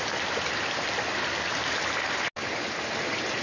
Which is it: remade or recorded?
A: recorded